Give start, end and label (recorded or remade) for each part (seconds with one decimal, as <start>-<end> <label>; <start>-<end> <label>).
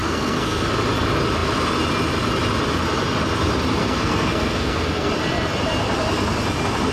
0.0-0.7 remade; 0.7-3.8 recorded; 3.8-5.1 remade; 5.1-6.9 recorded